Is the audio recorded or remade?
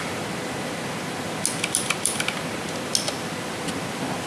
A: recorded